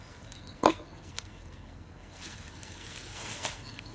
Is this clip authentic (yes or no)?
no